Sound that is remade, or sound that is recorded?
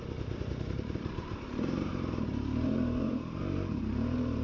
remade